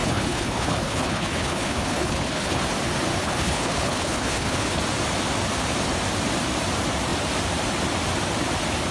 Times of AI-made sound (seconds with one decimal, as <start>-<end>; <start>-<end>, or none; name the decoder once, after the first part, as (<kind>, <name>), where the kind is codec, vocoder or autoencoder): 0.0-2.6 (codec, HILCodec); 3.2-4.8